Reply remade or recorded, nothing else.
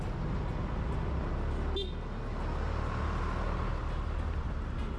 recorded